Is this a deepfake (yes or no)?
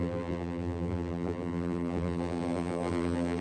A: yes